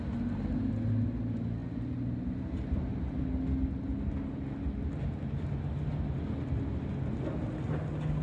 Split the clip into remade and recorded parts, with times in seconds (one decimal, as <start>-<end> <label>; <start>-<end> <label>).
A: 0.0-8.2 recorded